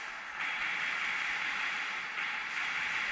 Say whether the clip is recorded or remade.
recorded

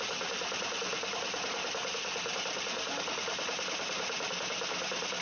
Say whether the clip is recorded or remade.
recorded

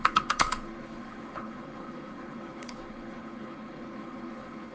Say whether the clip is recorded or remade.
remade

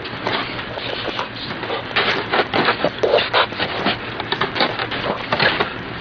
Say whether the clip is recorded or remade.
remade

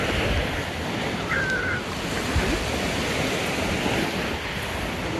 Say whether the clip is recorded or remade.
recorded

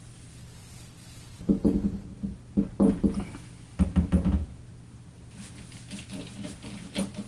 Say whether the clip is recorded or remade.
recorded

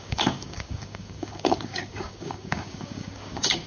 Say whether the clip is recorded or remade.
remade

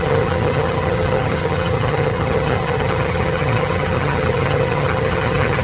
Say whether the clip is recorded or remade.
remade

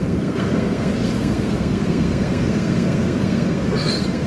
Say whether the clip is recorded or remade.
remade